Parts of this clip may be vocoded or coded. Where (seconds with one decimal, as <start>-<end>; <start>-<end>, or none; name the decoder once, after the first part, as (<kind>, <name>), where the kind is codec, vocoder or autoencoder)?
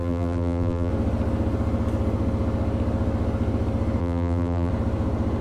0.0-0.9 (vocoder, BigVGAN v2); 4.0-4.7